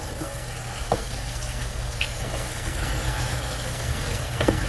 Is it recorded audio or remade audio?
remade